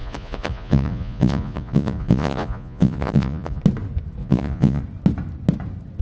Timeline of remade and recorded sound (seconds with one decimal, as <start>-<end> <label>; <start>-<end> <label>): 0.0-3.6 remade; 3.6-4.2 recorded; 4.2-4.8 remade; 4.8-6.0 recorded